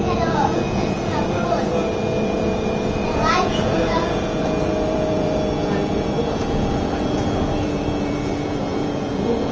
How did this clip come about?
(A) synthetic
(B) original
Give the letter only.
A